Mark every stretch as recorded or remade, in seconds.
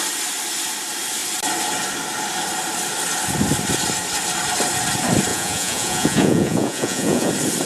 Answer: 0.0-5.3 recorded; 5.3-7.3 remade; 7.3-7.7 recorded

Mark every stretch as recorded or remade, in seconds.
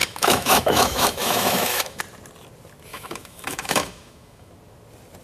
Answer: 0.0-2.0 remade; 2.0-2.9 recorded; 2.9-4.5 remade; 4.5-5.2 recorded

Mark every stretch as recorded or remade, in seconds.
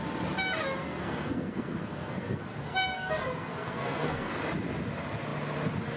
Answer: 0.0-0.8 recorded; 0.8-4.4 remade; 4.4-6.0 recorded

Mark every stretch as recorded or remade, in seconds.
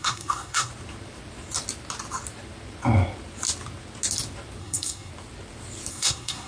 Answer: 0.0-0.7 remade; 0.7-4.6 recorded; 4.6-5.1 remade; 5.1-5.9 recorded; 5.9-6.5 remade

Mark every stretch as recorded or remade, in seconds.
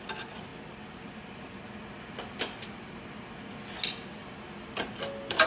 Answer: 0.0-5.5 recorded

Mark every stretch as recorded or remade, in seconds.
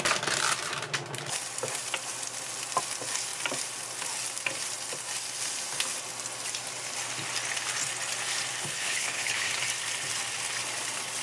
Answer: 0.0-8.6 recorded; 8.6-9.5 remade; 9.5-11.2 recorded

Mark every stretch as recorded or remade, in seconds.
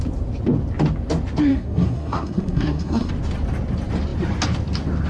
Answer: 0.0-1.5 recorded; 1.5-3.1 remade; 3.1-5.1 recorded